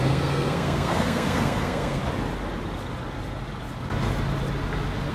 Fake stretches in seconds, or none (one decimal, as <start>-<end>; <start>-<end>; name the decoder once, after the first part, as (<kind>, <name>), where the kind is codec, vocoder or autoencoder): 0.0-2.0 (codec, SNAC)